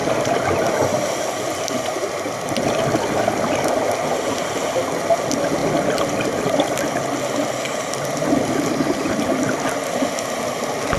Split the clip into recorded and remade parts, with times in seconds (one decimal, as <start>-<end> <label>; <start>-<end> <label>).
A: 0.0-11.0 recorded